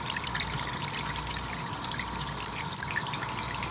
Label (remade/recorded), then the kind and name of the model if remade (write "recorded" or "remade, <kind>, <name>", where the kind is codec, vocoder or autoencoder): recorded